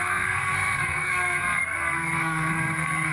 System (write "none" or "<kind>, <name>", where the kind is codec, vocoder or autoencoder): codec, SNAC